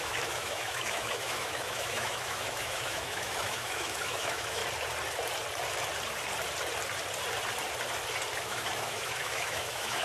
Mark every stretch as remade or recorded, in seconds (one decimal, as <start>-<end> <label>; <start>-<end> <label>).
0.0-4.6 remade; 4.6-8.4 recorded; 8.4-10.0 remade